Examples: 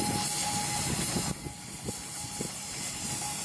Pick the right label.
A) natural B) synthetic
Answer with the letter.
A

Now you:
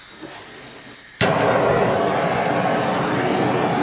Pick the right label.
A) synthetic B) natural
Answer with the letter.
B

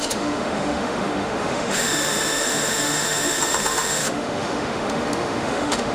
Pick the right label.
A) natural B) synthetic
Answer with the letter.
B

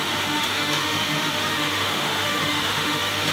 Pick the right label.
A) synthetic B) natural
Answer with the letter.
A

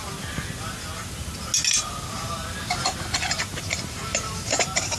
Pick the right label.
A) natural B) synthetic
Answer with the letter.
A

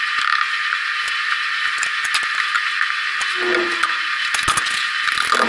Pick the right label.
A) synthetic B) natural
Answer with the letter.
B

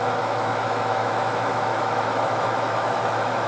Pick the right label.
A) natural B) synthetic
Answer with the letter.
B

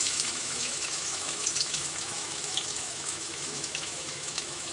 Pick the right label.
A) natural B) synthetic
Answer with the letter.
B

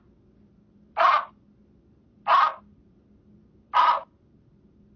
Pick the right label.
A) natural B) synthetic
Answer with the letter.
A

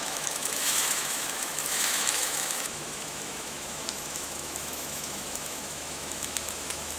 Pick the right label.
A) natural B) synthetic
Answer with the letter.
B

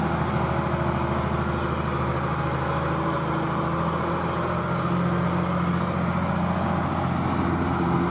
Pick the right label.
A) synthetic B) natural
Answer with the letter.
B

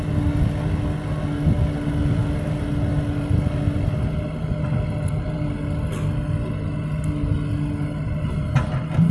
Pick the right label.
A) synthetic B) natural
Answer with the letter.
B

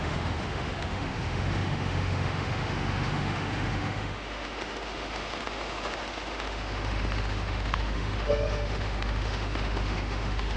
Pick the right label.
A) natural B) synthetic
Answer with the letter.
B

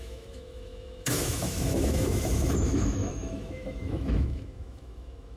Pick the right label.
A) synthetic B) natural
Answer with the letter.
A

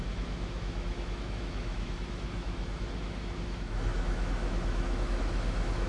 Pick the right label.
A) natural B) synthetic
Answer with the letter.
B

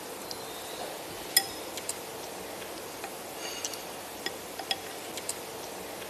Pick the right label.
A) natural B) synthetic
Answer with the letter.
A